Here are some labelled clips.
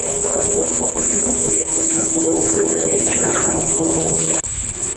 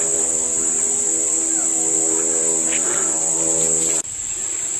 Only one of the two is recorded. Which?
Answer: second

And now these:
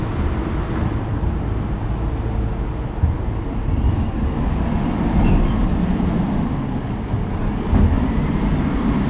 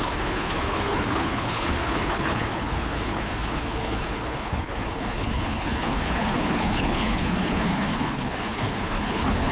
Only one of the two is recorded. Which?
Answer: first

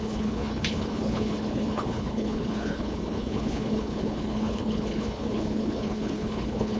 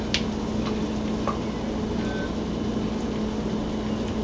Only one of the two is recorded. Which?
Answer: second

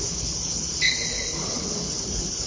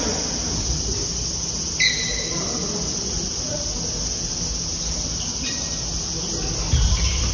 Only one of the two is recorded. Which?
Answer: second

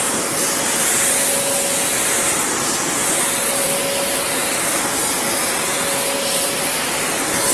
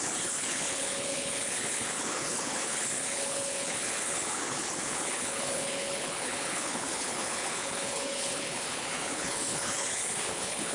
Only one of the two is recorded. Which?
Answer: first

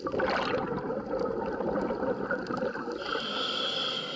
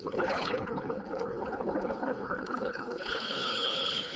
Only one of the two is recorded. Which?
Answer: first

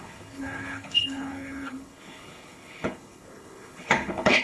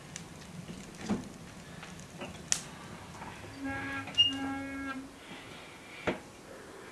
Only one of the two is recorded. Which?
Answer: second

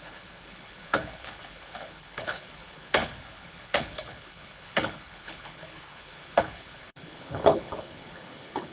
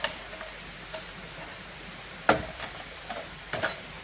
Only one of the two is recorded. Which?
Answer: second